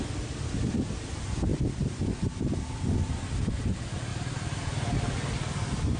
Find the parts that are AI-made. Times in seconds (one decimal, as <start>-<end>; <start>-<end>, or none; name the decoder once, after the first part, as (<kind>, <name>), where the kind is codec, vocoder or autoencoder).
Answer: 1.5-2.1 (vocoder, BigVGAN v2); 4.1-5.3